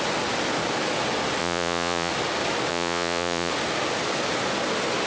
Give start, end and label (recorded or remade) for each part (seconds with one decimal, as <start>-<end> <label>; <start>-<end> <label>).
0.0-1.4 recorded; 1.4-2.1 remade; 2.1-2.7 recorded; 2.7-3.5 remade; 3.5-5.1 recorded